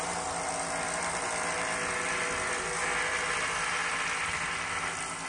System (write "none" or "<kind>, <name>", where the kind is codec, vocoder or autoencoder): none